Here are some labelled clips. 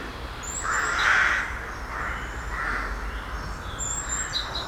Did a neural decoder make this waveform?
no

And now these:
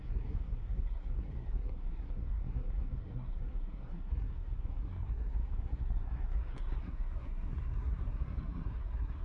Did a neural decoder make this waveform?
yes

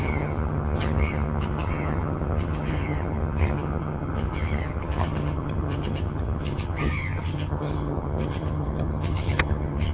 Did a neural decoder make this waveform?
yes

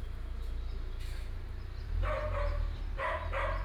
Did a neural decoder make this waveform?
no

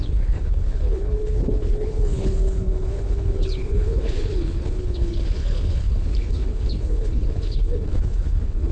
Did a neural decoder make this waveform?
yes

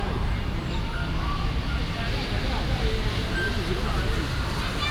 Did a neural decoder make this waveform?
no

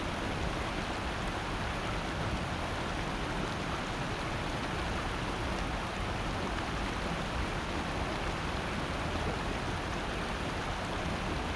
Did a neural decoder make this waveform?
no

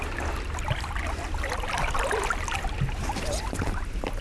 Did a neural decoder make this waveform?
no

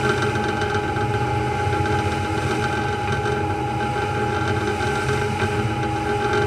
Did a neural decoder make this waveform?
no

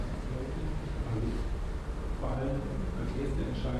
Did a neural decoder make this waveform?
no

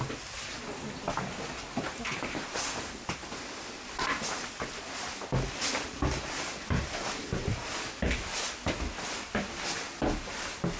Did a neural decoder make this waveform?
no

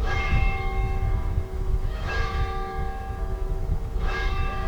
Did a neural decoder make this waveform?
yes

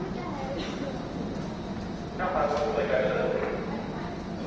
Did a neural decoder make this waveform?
no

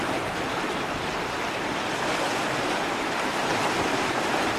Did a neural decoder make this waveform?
no